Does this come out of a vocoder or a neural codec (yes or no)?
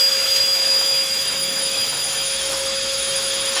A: yes